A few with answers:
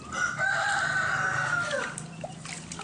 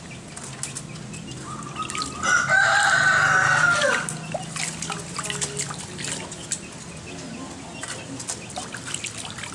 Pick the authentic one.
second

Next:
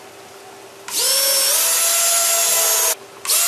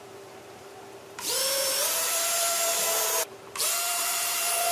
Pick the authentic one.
first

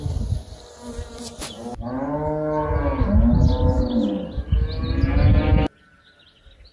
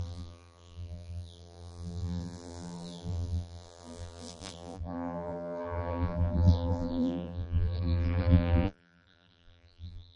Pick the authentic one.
first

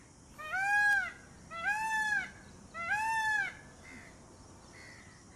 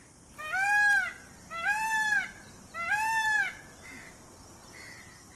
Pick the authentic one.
first